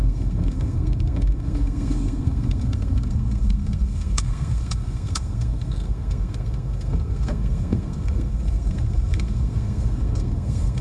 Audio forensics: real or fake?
fake